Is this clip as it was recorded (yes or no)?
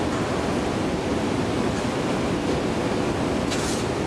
yes